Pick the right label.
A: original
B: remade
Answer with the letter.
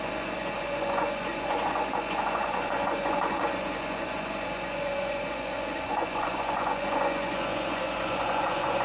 B